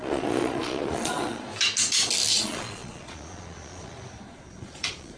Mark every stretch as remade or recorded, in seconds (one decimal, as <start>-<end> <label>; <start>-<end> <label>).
0.0-1.5 remade; 1.5-2.3 recorded; 2.3-5.2 remade